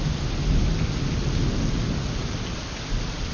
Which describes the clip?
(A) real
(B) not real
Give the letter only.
A